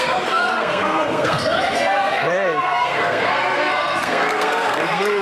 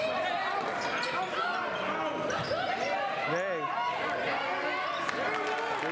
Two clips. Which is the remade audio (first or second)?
first